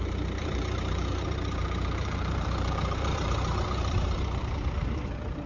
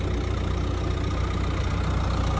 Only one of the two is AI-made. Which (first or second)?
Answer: first